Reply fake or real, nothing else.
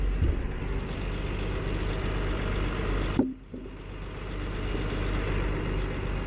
real